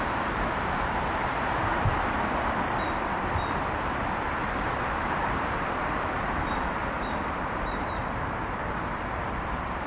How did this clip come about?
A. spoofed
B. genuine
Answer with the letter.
A